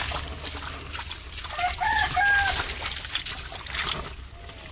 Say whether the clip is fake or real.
real